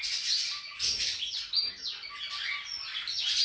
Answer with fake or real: real